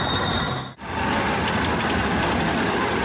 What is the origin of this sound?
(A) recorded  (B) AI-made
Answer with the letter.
A